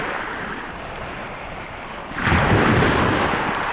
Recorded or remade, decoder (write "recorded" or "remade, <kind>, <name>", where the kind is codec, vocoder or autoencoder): recorded